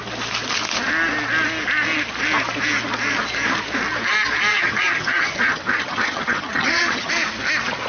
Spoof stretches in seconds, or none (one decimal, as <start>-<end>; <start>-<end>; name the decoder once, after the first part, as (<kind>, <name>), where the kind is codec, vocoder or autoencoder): 4.5-7.1 (vocoder, HiFi-GAN)